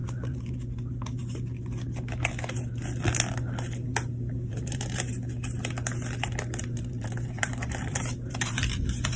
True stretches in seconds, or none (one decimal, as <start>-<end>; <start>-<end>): 1.2-4.5; 5.1-6.6